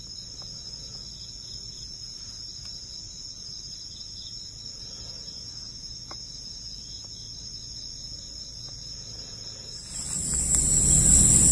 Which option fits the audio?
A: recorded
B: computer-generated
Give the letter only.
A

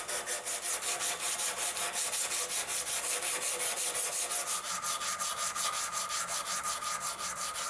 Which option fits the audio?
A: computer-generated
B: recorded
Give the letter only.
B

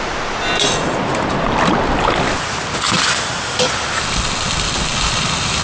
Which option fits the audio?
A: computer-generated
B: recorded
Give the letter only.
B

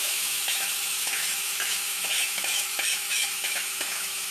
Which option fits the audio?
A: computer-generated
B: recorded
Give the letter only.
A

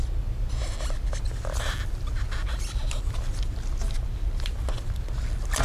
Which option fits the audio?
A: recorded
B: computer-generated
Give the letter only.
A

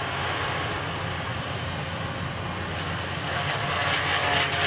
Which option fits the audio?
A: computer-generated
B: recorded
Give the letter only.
B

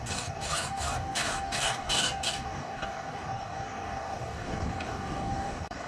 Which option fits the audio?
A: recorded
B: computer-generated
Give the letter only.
B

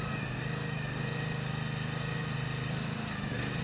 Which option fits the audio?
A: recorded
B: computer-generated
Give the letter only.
A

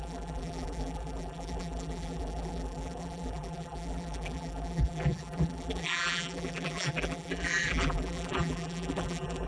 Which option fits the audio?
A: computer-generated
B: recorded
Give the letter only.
A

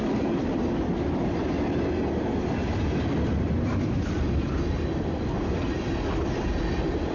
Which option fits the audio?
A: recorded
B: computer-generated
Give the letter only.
A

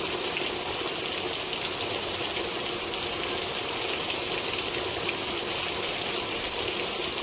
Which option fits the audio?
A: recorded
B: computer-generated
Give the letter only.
A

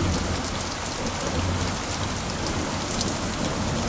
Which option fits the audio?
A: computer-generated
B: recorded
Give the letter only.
B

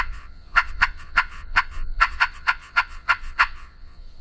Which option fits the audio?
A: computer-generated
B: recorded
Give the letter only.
A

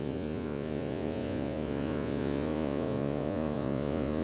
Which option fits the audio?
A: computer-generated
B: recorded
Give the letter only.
A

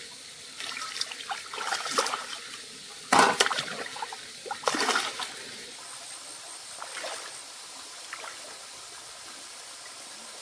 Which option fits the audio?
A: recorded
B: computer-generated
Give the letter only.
A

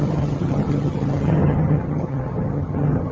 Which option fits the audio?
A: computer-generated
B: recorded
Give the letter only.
A